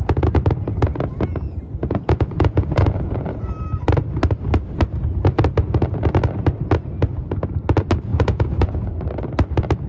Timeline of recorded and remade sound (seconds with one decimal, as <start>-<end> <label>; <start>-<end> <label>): 0.0-1.8 recorded; 1.8-3.5 remade; 3.5-8.1 recorded; 8.1-9.0 remade; 9.0-9.9 recorded

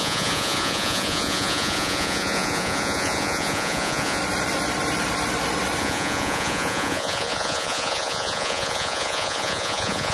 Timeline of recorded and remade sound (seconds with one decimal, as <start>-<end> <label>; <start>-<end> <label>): 0.0-4.2 remade; 4.2-5.8 recorded; 5.8-10.1 remade